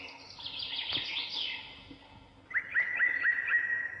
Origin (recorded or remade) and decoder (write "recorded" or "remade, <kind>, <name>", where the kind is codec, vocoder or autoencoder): recorded